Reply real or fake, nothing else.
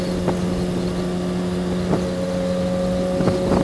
real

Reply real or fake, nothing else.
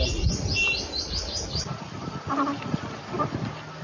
real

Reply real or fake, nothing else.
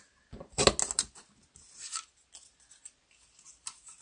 real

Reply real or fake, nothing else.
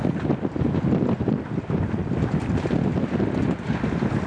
real